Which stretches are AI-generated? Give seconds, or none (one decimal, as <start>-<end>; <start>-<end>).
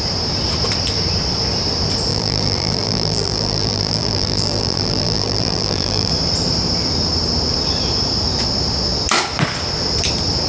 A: 2.1-6.1